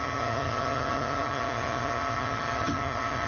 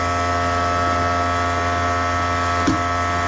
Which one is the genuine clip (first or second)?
second